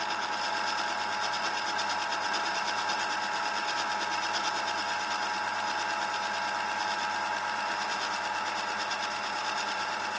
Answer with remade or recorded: recorded